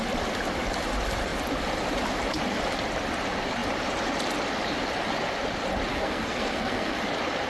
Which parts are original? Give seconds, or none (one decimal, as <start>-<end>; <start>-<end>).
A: 0.0-5.9; 7.0-7.5